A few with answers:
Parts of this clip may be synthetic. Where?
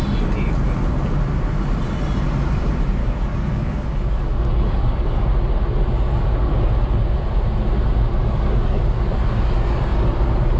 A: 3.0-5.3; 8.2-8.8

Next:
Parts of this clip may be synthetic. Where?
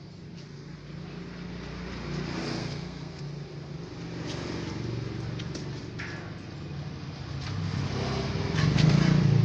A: 2.6-3.2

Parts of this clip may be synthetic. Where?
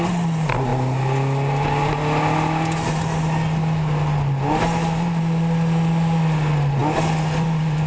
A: none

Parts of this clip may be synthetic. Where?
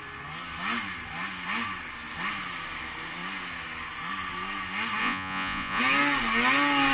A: 5.0-5.8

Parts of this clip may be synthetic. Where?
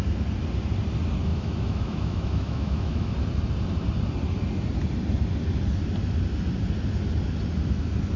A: 1.3-3.1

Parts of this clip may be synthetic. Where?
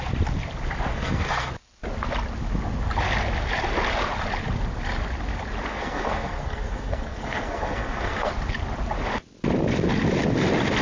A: 0.9-1.5; 5.7-8.3